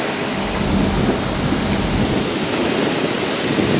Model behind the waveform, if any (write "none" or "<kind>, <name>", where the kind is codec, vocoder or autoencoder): none